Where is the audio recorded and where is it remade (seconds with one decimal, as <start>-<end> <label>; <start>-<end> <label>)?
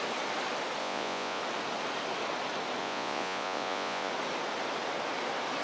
0.0-0.8 recorded; 0.8-1.4 remade; 1.4-2.8 recorded; 2.8-4.1 remade; 4.1-5.6 recorded